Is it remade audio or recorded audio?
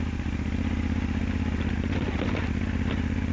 recorded